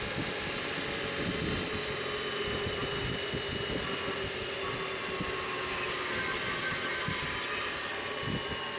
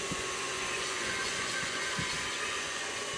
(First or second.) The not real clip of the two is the second